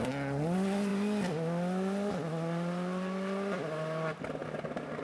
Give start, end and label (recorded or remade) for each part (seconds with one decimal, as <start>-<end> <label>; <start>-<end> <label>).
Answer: 0.0-5.0 recorded